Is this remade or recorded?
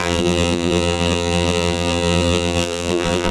remade